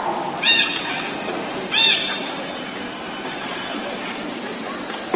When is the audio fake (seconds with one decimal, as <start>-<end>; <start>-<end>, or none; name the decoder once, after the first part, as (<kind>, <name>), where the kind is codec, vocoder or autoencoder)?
0.0-0.6 (vocoder, BigVGAN v2)